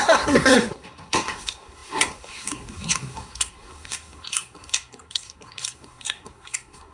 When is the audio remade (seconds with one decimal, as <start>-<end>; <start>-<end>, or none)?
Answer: 0.0-6.9